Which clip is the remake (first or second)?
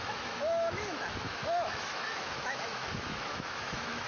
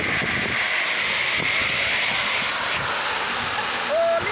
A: first